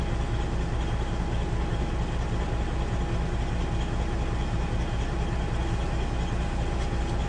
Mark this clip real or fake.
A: real